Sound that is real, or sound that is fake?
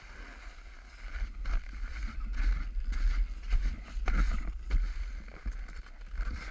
real